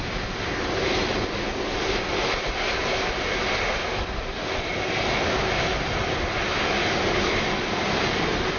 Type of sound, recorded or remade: recorded